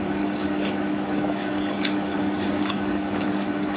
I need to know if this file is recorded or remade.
remade